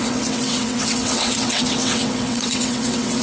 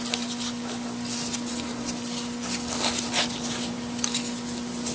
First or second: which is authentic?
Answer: second